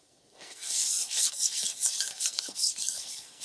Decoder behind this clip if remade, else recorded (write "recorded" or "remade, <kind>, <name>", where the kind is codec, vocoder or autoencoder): remade, codec, SNAC